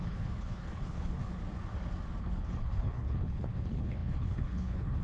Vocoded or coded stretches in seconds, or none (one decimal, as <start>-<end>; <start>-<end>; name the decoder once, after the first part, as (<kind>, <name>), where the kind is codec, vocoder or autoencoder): 0.0-1.4 (codec, HILCodec); 2.2-5.0